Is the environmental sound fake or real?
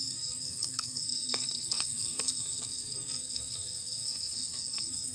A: fake